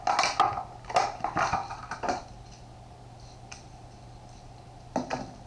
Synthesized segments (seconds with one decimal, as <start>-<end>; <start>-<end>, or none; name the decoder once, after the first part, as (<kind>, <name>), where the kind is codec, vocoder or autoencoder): none